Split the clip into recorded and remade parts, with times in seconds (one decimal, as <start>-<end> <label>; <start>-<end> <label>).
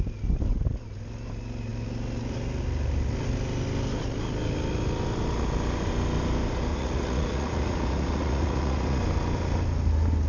0.0-6.7 recorded; 6.7-9.0 remade; 9.0-10.3 recorded